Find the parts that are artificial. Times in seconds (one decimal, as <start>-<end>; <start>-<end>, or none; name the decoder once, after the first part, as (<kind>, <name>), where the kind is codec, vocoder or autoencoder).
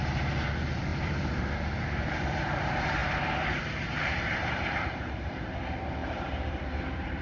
0.0-7.2 (vocoder, BigVGAN v2)